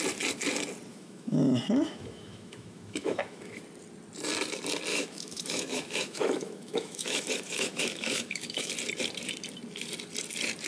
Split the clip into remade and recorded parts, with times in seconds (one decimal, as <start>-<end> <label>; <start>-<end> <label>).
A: 0.0-0.9 recorded; 0.9-3.6 remade; 3.6-4.9 recorded; 4.9-8.7 remade; 8.7-10.7 recorded